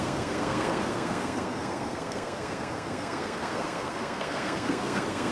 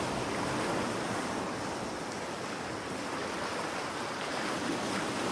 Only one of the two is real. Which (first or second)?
second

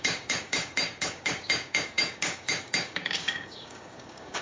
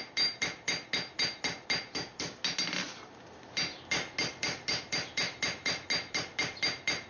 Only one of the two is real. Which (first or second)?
second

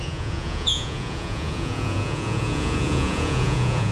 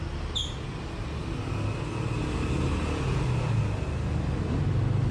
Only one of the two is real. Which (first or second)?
second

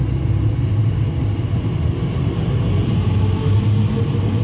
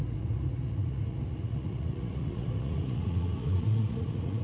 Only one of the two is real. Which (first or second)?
first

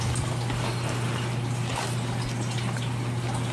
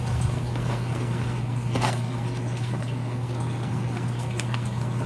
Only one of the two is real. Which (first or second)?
first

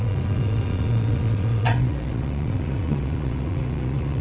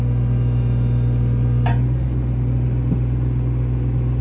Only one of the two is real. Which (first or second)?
second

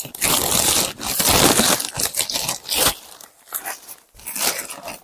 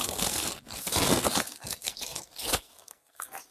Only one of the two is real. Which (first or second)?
first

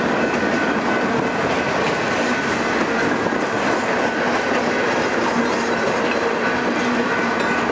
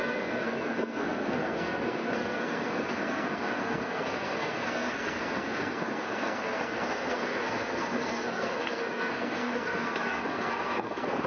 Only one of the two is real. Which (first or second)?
first